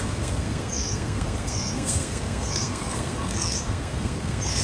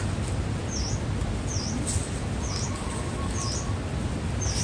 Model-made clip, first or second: first